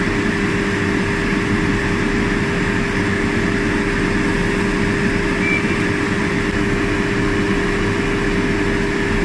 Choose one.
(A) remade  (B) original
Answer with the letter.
B